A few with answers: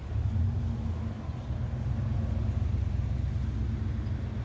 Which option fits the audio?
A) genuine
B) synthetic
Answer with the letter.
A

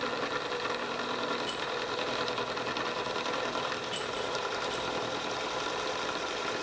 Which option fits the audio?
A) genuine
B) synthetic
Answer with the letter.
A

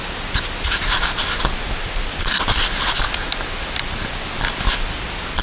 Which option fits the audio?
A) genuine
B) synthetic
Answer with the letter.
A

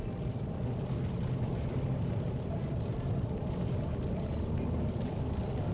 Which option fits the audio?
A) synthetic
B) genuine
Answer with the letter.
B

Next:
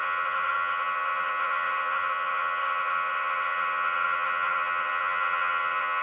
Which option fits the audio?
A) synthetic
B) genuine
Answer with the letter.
A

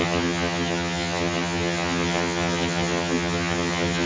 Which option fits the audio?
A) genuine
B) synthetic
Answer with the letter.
B